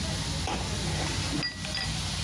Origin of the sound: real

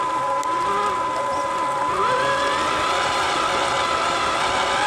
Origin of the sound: real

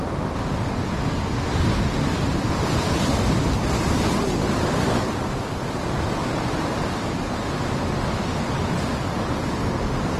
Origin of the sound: real